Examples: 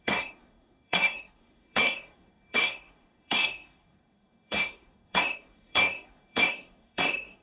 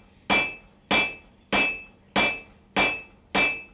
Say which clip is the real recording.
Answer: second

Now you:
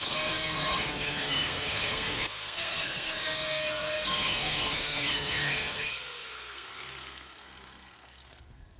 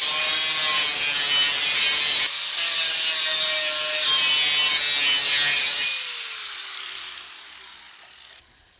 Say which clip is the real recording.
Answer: second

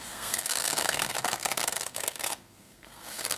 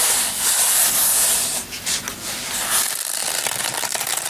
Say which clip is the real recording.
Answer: second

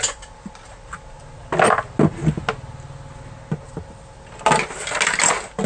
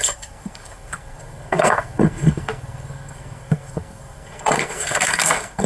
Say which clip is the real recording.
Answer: first